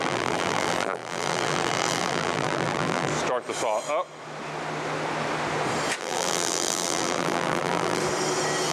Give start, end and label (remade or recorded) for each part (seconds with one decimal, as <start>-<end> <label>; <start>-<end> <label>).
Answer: 0.0-3.1 remade; 3.1-6.0 recorded; 6.0-8.0 remade; 8.0-8.7 recorded